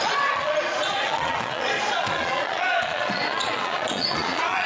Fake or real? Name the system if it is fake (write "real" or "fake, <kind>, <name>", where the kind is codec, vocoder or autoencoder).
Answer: fake, vocoder, Vocos